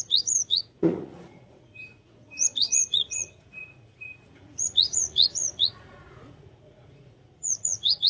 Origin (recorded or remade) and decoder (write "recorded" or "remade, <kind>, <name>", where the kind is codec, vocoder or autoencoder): remade, vocoder, Vocos